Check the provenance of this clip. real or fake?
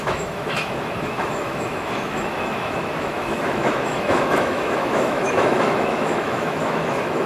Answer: fake